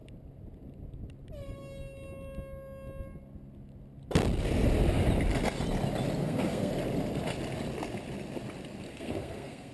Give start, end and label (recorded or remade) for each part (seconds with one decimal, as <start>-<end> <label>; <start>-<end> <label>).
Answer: 0.0-6.2 recorded; 6.2-6.7 remade; 6.7-8.9 recorded; 8.9-9.7 remade